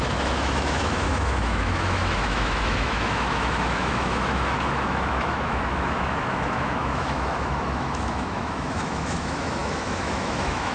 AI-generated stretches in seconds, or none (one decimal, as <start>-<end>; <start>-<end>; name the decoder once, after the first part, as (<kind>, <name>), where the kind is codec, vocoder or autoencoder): 0.0-10.7 (autoencoder, DAC-VAE)